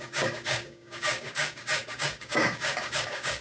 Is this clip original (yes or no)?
no